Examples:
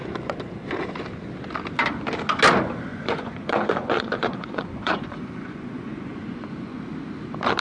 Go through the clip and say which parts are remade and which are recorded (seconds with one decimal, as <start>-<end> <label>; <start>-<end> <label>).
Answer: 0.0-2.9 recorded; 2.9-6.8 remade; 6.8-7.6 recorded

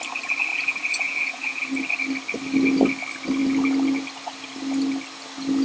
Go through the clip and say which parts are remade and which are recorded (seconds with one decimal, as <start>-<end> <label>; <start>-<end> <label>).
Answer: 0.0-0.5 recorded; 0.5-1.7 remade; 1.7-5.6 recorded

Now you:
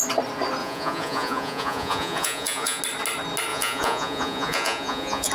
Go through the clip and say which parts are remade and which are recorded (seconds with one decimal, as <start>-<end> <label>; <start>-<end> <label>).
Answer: 0.0-0.6 recorded; 0.6-2.8 remade; 2.8-3.5 recorded; 3.5-5.3 remade

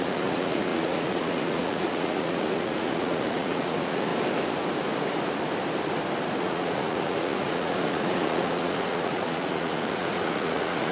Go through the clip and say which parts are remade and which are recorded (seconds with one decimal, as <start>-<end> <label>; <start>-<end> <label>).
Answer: 0.0-4.1 remade; 4.1-6.4 recorded; 6.4-10.9 remade

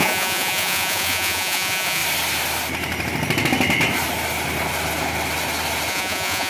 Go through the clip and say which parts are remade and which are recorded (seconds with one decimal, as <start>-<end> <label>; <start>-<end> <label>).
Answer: 0.0-2.0 remade; 2.0-5.9 recorded; 5.9-6.5 remade

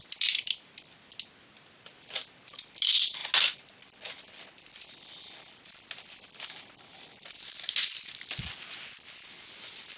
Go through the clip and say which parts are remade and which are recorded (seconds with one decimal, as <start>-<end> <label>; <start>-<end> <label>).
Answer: 0.0-10.0 recorded